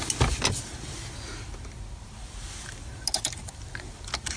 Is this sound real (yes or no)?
yes